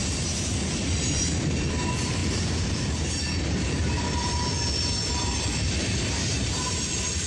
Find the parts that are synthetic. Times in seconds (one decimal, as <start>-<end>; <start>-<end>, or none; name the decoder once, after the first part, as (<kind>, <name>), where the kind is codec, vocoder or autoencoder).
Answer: 0.0-7.3 (vocoder, BigVGAN v2)